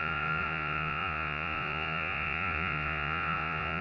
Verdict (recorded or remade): remade